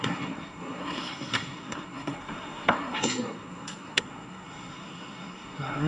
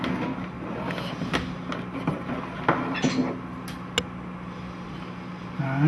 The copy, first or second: first